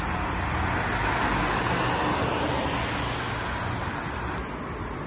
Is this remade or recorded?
recorded